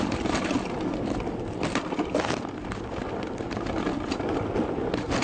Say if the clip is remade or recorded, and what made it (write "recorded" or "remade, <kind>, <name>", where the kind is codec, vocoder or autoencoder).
recorded